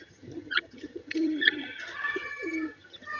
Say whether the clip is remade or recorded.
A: remade